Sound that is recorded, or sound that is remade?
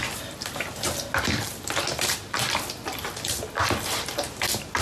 recorded